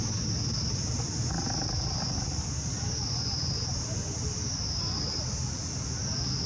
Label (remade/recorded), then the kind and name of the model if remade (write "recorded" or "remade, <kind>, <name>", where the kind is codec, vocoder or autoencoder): recorded